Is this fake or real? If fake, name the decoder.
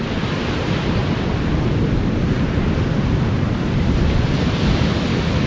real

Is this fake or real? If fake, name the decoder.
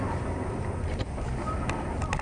real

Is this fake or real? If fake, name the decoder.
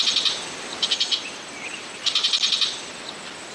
real